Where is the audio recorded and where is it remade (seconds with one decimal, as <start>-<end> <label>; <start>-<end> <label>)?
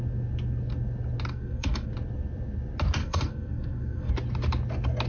0.0-1.3 recorded; 1.3-1.9 remade; 1.9-3.0 recorded; 3.0-4.1 remade; 4.1-5.1 recorded